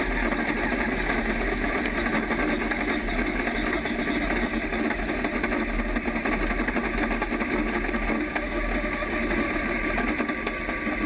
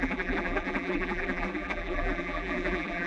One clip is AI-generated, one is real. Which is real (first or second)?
first